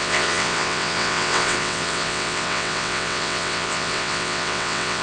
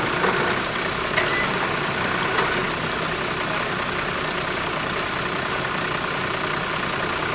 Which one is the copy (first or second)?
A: first